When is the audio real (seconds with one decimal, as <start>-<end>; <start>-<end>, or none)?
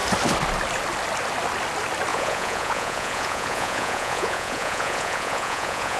0.0-2.1